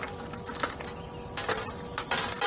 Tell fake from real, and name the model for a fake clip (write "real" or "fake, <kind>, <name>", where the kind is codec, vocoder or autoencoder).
real